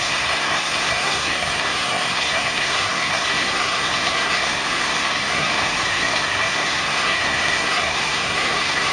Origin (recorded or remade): remade